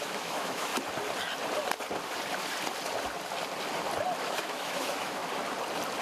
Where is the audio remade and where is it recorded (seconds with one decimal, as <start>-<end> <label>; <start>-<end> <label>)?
0.0-0.7 remade; 0.7-4.2 recorded; 4.2-5.2 remade; 5.2-6.0 recorded